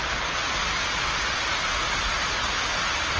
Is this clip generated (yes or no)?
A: no